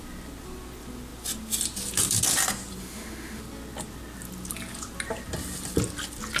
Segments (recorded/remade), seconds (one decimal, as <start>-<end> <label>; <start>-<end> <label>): 0.0-2.8 recorded; 2.8-3.4 remade; 3.4-6.4 recorded